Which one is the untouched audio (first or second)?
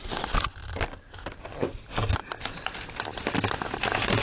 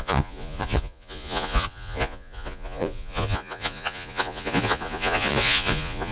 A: first